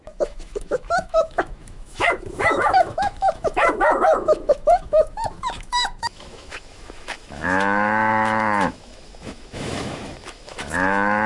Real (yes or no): no